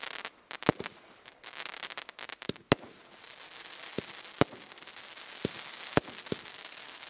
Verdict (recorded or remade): recorded